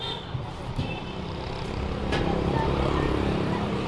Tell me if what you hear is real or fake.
fake